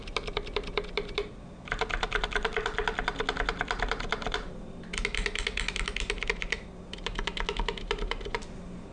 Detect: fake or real real